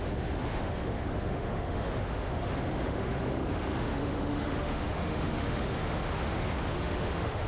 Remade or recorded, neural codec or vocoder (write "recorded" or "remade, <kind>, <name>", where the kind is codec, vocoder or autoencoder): remade, autoencoder, DAC-VAE